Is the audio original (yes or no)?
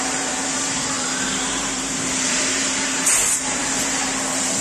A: no